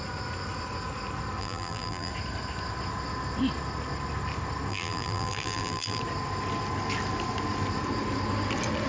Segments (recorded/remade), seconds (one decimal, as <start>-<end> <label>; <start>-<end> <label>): 0.0-1.4 recorded; 1.4-2.1 remade; 2.1-4.7 recorded; 4.7-6.0 remade; 6.0-8.9 recorded